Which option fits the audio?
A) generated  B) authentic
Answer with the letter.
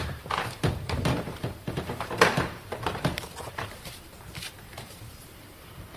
A